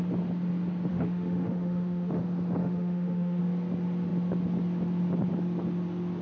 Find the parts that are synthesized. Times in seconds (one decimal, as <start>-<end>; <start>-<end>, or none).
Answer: 0.9-2.2; 2.6-3.4